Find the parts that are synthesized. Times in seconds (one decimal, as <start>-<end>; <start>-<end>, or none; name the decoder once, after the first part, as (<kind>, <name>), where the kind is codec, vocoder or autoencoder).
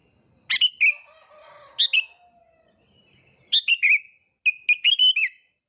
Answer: none